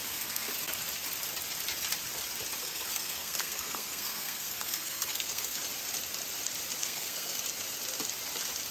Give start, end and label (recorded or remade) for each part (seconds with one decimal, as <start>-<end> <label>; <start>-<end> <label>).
0.0-0.5 remade; 0.5-2.6 recorded; 2.6-5.6 remade; 5.6-6.8 recorded; 6.8-7.4 remade; 7.4-8.7 recorded